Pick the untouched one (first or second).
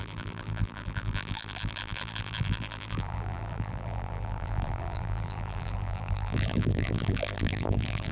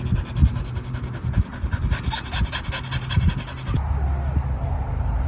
second